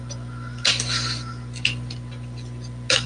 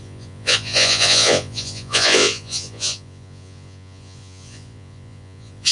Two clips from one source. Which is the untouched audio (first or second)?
first